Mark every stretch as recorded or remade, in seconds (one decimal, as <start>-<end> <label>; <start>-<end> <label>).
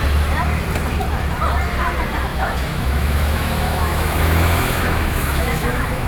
0.0-2.3 recorded; 2.3-6.1 remade